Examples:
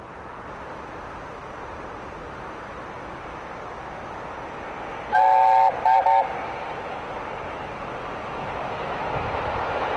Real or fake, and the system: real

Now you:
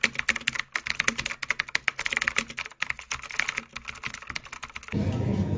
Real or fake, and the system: real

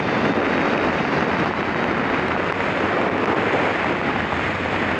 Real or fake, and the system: real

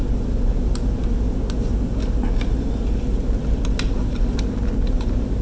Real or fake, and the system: real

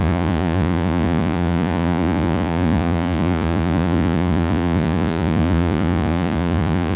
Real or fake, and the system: fake, vocoder, Vocos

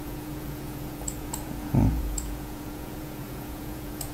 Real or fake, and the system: fake, vocoder, Vocos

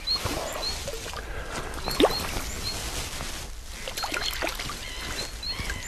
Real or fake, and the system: real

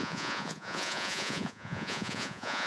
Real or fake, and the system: fake, vocoder, Vocos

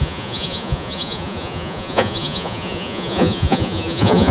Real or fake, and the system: fake, vocoder, Vocos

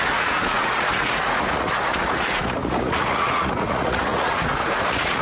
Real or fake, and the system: fake, vocoder, Vocos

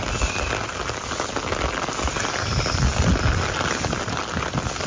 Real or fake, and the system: real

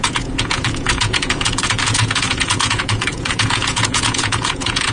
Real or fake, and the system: fake, vocoder, Vocos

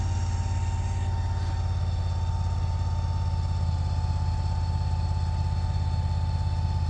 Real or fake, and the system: real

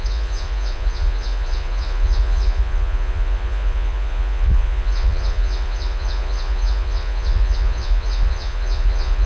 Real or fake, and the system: fake, vocoder, Vocos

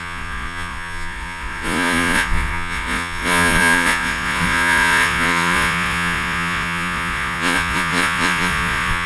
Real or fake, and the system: fake, vocoder, Vocos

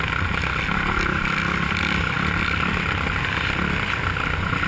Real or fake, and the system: real